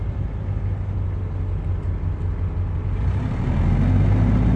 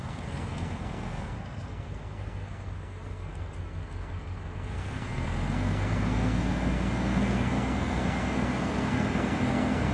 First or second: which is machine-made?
second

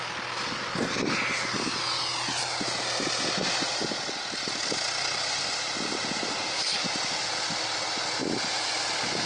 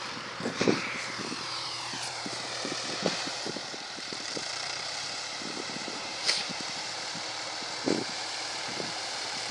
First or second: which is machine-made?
second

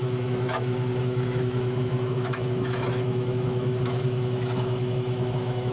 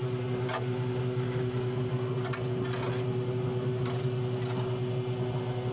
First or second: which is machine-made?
first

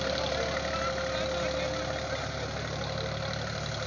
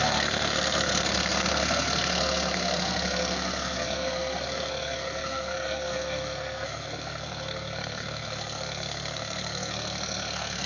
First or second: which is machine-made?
second